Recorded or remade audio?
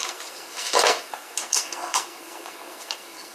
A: remade